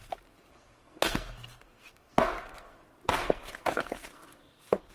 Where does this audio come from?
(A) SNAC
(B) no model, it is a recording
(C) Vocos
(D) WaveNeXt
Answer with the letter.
A